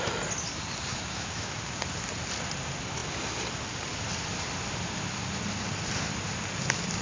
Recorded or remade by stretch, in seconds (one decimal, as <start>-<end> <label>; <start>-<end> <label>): 0.0-0.9 recorded; 0.9-1.8 remade; 1.8-7.0 recorded